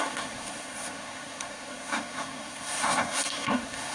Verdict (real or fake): fake